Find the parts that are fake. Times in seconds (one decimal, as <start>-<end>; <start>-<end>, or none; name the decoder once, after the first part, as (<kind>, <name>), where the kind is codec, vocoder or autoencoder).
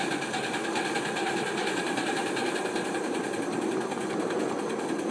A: 1.2-3.4 (vocoder, BigVGAN v2)